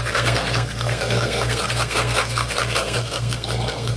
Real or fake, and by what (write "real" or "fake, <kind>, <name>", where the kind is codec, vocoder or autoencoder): fake, codec, SNAC